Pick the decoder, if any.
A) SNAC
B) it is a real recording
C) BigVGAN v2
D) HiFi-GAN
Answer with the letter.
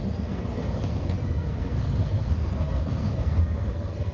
A